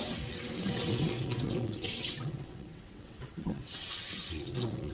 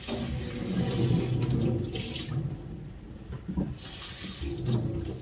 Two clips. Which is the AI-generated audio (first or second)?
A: first